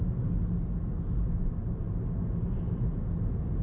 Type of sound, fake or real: real